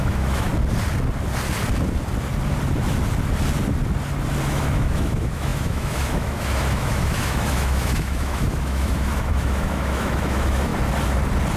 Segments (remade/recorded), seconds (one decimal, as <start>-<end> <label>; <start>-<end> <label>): 0.0-0.5 remade; 0.5-4.4 recorded; 4.4-10.7 remade; 10.7-11.6 recorded